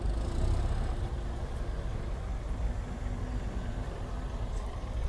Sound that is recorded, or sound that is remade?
recorded